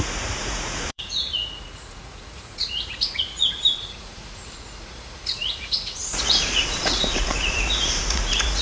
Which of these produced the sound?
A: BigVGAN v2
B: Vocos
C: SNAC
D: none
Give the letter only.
B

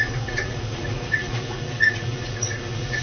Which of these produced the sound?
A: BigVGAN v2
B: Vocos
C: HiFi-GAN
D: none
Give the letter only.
B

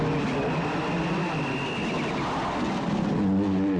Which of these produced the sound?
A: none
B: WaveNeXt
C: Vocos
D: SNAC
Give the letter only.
A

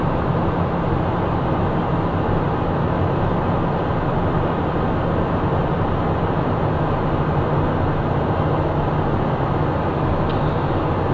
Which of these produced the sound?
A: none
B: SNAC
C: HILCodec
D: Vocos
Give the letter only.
A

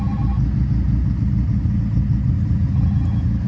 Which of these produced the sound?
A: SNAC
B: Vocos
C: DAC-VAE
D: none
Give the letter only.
D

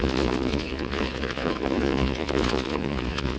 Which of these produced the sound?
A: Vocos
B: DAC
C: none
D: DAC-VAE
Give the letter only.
A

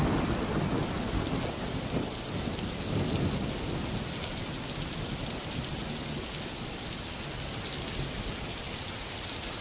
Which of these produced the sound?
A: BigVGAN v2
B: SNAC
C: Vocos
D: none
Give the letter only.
D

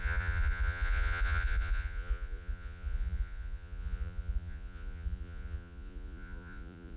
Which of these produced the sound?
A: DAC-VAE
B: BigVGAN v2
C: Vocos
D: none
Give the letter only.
C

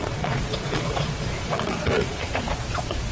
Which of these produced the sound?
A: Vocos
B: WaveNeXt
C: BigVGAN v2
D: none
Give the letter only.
A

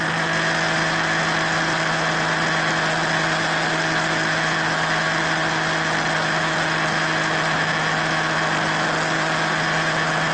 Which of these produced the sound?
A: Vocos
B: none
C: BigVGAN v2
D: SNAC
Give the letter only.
B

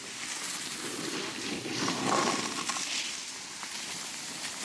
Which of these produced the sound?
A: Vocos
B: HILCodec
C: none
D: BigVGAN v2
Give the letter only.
C